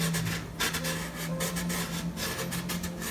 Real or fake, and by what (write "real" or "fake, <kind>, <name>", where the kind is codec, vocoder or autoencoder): real